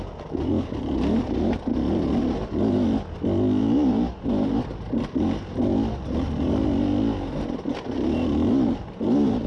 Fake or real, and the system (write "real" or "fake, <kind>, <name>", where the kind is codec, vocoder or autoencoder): real